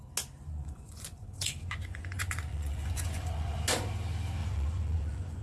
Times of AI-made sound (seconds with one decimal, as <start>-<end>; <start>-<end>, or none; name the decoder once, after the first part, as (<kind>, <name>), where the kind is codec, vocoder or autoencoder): 0.4-3.6 (vocoder, Vocos); 4.4-5.4